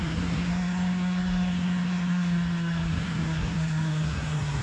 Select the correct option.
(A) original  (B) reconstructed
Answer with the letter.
B